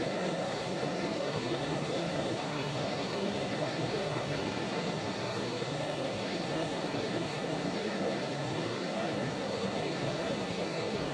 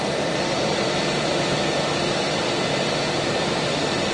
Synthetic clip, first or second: first